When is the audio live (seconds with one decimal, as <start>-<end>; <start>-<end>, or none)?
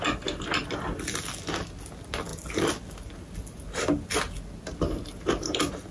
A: 0.0-5.9